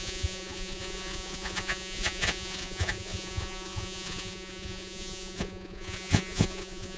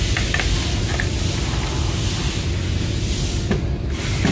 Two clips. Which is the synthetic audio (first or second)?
first